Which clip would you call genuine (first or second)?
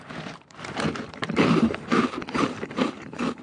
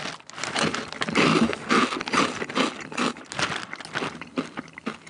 second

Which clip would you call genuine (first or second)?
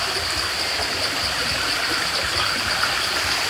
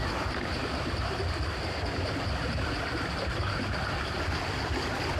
first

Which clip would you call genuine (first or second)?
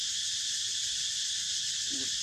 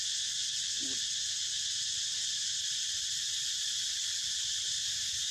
second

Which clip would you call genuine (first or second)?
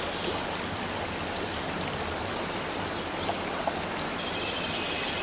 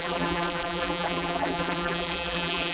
first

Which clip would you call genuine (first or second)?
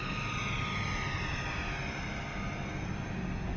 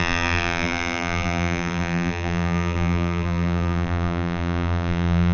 first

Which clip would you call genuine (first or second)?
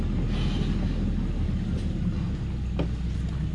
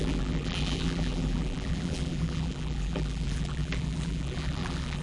first